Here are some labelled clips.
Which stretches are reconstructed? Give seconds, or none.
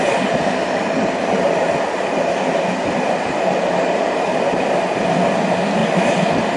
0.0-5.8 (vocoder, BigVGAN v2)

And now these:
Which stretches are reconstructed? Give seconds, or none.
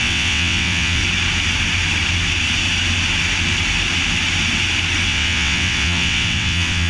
0.0-1.0 (vocoder, WaveNeXt); 5.1-6.9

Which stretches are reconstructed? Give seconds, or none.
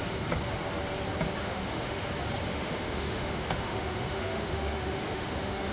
1.4-2.1 (autoencoder, DAC-VAE); 2.5-5.7